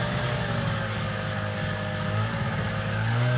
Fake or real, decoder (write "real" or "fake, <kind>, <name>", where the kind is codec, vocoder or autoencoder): fake, codec, DAC